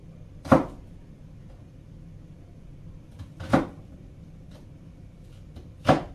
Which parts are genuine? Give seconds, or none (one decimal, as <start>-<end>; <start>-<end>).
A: 0.0-3.5